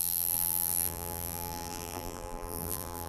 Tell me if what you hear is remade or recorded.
remade